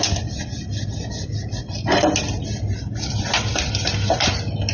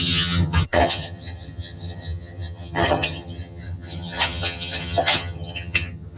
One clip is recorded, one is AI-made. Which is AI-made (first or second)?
second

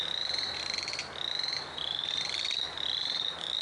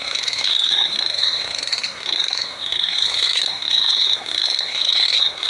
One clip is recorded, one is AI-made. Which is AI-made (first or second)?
second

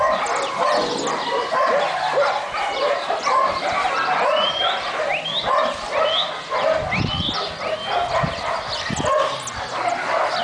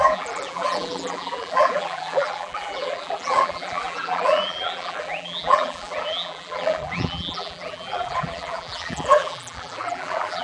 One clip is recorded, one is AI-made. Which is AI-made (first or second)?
second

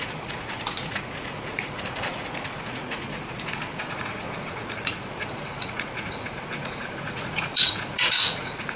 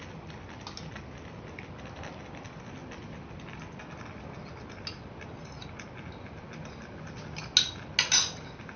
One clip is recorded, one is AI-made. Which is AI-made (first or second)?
first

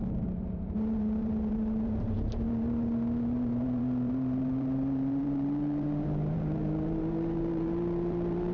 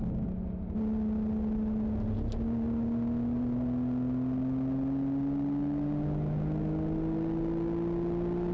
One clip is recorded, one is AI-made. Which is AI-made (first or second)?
first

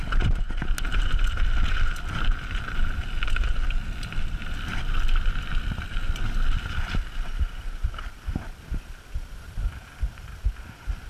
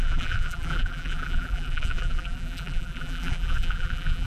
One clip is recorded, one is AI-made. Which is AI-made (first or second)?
second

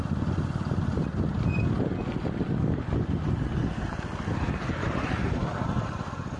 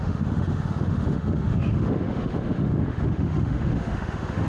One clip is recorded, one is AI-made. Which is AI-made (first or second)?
second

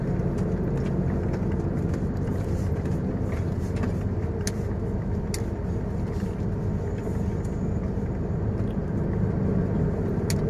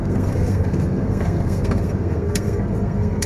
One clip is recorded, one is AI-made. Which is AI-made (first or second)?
second